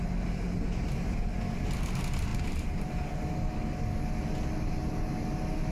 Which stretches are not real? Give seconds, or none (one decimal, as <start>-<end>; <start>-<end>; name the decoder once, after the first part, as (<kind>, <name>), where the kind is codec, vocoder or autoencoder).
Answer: 2.3-2.9 (vocoder, BigVGAN v2)